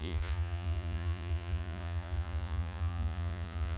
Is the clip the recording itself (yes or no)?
no